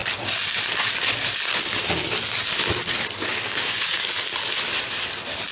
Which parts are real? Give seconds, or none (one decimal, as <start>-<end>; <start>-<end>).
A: 0.0-3.3; 4.0-5.5